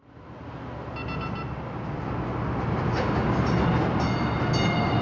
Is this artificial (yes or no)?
no